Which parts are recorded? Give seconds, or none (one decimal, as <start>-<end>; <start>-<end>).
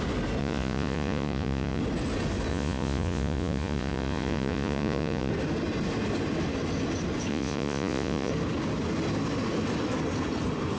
0.0-0.4; 1.8-2.5; 5.3-7.3; 8.3-10.8